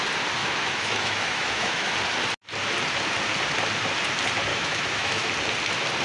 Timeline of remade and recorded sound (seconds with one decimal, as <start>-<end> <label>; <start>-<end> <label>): 0.0-0.4 recorded; 0.4-1.9 remade; 1.9-4.5 recorded; 4.5-5.3 remade; 5.3-6.0 recorded